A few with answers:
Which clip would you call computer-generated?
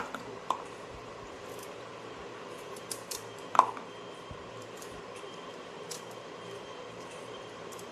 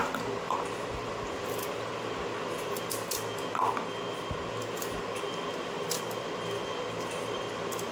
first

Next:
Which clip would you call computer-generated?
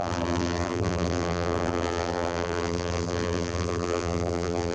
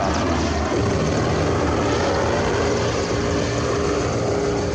first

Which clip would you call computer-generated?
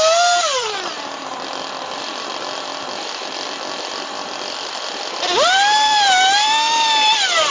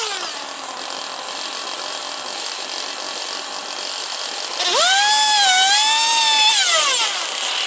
first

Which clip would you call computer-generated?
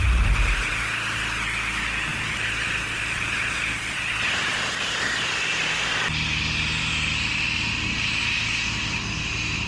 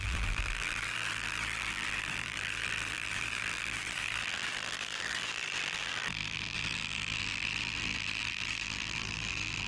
second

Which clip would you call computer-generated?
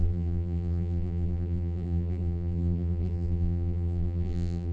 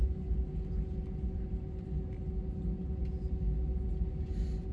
first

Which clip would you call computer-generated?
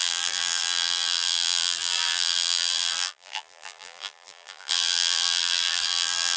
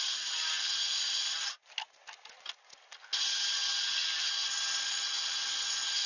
first